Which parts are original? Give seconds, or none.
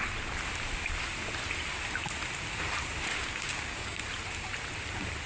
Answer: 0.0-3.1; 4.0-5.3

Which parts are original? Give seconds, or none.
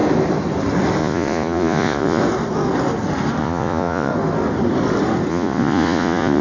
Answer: 0.0-1.0; 2.2-3.4; 4.1-5.3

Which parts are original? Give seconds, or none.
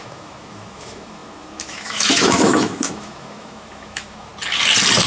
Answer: 4.3-5.1